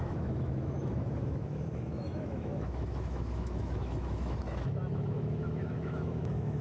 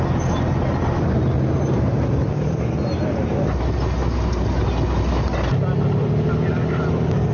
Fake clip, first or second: first